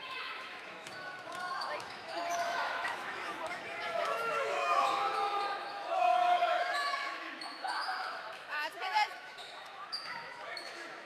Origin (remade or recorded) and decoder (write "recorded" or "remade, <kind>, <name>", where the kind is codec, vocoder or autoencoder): remade, autoencoder, DAC-VAE